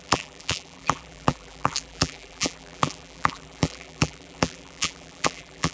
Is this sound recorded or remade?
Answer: remade